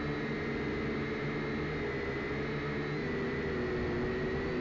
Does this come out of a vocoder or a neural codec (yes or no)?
no